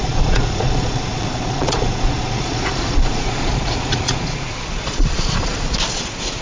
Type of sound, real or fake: fake